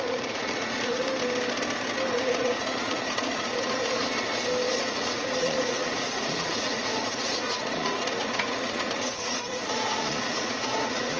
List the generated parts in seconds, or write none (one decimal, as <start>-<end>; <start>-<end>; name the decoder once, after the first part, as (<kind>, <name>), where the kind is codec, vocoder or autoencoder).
0.0-1.1 (vocoder, Vocos); 2.1-4.1; 4.7-11.2